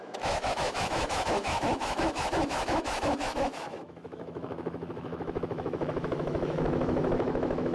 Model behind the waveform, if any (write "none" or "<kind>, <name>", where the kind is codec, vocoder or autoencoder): autoencoder, DAC-VAE